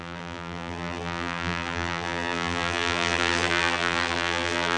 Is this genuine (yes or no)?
no